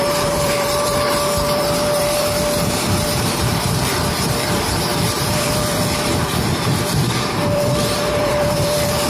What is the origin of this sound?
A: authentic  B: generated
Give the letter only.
B